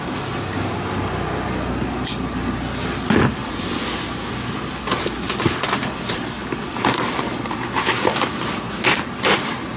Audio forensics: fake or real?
real